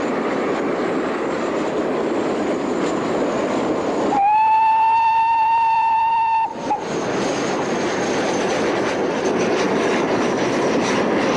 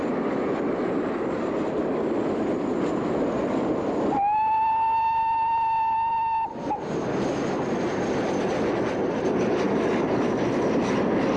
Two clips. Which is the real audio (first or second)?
second